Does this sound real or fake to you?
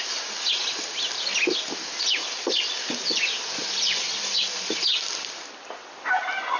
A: real